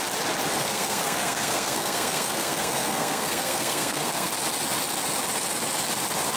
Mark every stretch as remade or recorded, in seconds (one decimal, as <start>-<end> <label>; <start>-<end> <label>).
0.0-0.5 recorded; 0.5-4.3 remade; 4.3-6.4 recorded